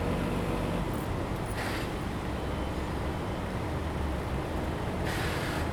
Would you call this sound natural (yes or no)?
yes